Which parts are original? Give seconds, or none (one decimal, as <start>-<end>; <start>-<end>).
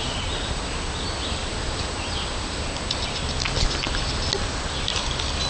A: 0.0-5.5